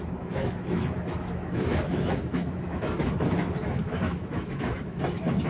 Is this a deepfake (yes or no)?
yes